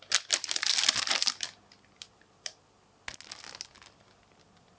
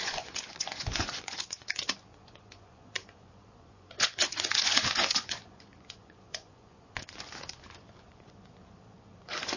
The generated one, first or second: second